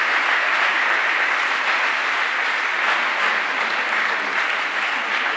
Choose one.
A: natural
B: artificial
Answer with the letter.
A